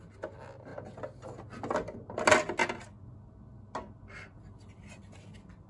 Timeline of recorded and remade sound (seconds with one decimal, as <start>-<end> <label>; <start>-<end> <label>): 0.0-5.7 recorded